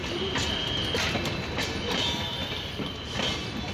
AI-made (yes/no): no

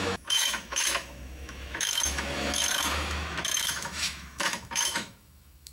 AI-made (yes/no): yes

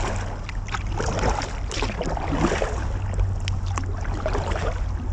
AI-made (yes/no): no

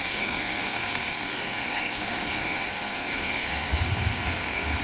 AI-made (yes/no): yes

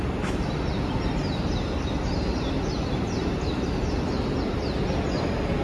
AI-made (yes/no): no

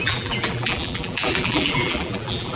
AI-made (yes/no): yes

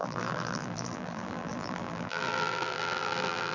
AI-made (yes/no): yes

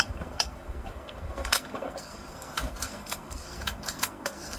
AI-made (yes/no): yes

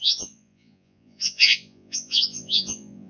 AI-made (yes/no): yes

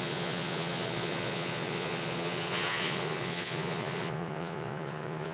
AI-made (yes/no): yes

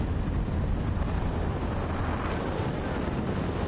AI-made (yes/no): no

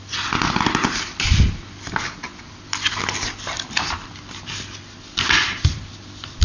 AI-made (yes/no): no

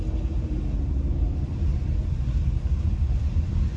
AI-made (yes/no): no